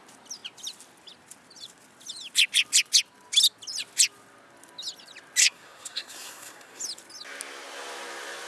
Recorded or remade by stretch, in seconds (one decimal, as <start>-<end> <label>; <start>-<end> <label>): 0.0-5.4 recorded; 5.4-6.8 remade; 6.8-8.5 recorded